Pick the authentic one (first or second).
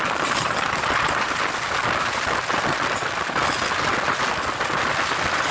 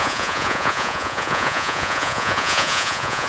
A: first